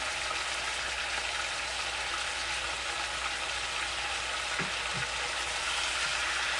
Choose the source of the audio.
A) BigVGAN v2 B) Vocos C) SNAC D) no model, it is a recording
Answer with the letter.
D